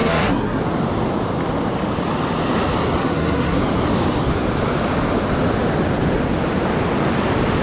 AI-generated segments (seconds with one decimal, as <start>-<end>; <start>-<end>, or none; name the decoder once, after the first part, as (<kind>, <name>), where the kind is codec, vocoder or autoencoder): 0.0-0.6 (codec, SNAC); 3.0-3.6